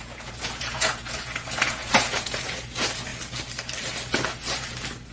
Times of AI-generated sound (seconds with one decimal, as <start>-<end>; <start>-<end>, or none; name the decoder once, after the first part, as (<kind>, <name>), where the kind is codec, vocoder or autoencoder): 0.0-3.1 (vocoder, Vocos)